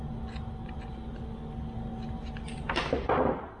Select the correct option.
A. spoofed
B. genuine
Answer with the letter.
B